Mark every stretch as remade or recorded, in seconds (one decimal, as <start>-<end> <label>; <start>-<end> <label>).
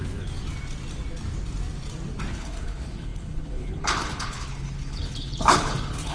0.0-2.3 recorded; 2.3-6.1 remade